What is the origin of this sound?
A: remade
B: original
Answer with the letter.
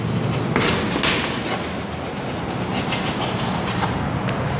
B